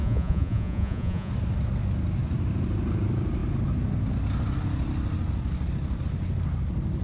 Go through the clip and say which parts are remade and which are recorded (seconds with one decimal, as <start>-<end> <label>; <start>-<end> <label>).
0.0-1.3 remade; 1.3-7.0 recorded